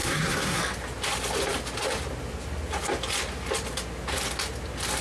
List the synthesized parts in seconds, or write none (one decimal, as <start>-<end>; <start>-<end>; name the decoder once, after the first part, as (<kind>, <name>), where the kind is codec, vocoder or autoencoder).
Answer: 0.0-0.6 (codec, SNAC)